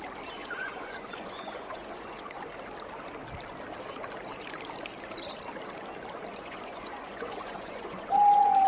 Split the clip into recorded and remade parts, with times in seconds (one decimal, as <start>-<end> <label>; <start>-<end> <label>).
0.0-0.4 recorded; 0.4-2.4 remade; 2.4-6.3 recorded; 6.3-8.7 remade